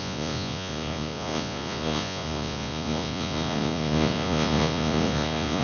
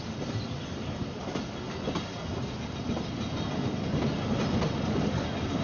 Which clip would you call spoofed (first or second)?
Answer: first